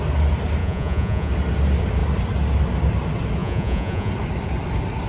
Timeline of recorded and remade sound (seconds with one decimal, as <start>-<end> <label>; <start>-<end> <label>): 0.0-0.6 recorded; 0.6-1.3 remade; 1.3-3.4 recorded; 3.4-4.1 remade; 4.1-5.1 recorded